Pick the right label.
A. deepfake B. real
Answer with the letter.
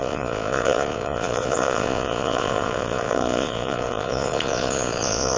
A